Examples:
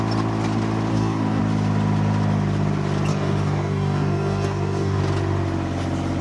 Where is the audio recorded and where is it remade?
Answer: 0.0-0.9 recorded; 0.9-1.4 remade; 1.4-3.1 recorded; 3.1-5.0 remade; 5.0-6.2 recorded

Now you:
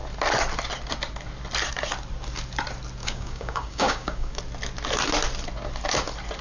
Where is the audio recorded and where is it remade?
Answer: 0.0-3.0 recorded; 3.0-4.4 remade; 4.4-6.4 recorded

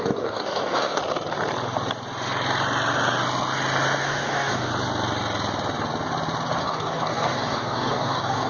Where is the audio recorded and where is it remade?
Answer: 0.0-1.0 remade; 1.0-4.0 recorded; 4.0-4.7 remade; 4.7-6.6 recorded; 6.6-8.5 remade

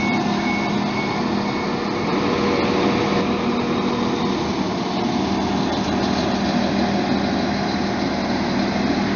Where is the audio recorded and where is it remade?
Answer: 0.0-9.2 recorded

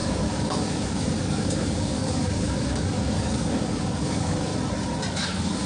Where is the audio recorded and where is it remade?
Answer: 0.0-4.5 remade; 4.5-5.1 recorded; 5.1-5.7 remade

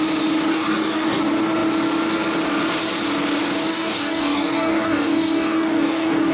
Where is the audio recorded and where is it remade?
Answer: 0.0-0.5 recorded; 0.5-1.2 remade; 1.2-3.7 recorded; 3.7-6.3 remade

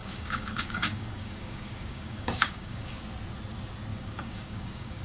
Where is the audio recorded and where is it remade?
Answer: 0.0-3.0 remade; 3.0-3.9 recorded; 3.9-5.0 remade

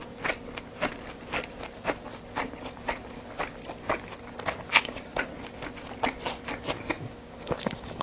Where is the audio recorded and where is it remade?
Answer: 0.0-4.7 recorded; 4.7-5.3 remade; 5.3-6.9 recorded; 6.9-8.0 remade